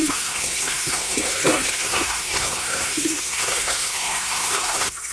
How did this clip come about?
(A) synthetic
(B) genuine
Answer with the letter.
A